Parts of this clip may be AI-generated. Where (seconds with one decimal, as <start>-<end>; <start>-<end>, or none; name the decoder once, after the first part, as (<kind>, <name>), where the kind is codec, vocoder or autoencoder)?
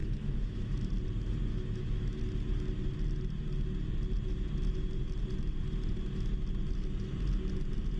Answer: 0.0-0.9 (autoencoder, DAC-VAE); 1.5-2.2